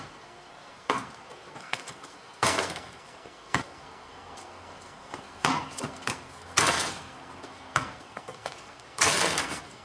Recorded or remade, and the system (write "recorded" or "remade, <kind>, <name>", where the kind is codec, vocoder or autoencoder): remade, codec, SNAC